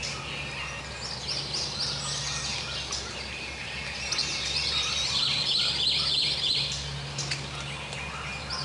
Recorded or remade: recorded